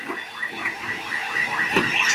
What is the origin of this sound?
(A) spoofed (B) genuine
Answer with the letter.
B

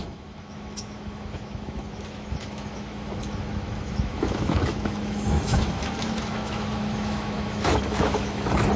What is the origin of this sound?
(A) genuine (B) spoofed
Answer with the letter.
B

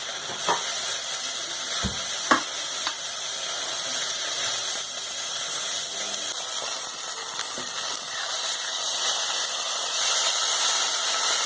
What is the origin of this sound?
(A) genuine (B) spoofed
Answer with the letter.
A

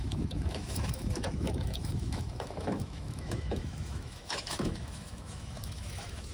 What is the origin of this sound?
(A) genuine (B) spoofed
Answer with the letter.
B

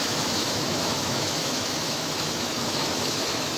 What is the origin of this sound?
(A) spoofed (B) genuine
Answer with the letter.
A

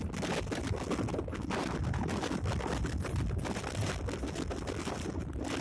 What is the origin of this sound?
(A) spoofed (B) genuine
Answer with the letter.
B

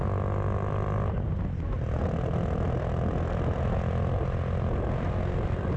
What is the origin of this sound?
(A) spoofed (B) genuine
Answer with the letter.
B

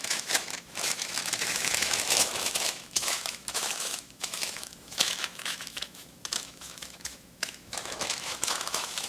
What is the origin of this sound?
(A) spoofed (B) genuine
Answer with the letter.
A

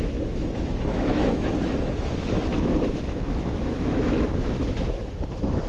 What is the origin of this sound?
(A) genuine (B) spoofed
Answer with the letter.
B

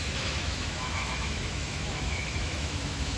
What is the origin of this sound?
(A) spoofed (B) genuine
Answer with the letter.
A